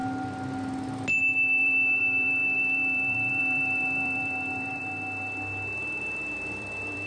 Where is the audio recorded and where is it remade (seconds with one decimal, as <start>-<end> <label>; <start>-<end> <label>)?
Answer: 0.0-1.6 recorded; 1.6-4.8 remade; 4.8-6.0 recorded; 6.0-7.1 remade